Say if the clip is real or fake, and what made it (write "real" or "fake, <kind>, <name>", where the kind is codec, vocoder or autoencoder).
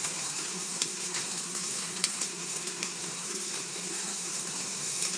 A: fake, codec, SNAC